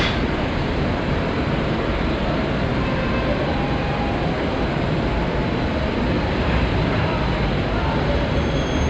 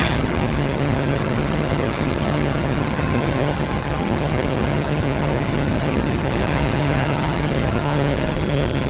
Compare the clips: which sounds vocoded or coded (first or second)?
second